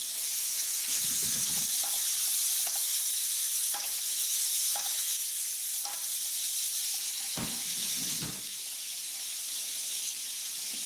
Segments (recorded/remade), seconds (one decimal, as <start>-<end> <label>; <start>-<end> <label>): 0.0-1.7 remade; 1.7-2.7 recorded; 2.7-5.5 remade; 5.5-7.0 recorded; 7.0-10.9 remade